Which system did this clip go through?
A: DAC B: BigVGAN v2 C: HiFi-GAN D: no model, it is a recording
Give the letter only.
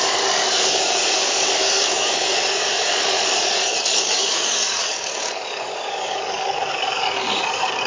A